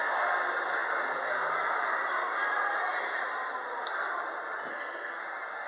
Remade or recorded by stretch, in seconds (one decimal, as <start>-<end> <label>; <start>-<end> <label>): 0.0-4.7 recorded; 4.7-5.2 remade; 5.2-5.7 recorded